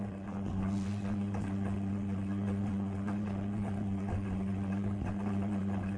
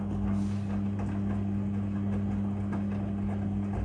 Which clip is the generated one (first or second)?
first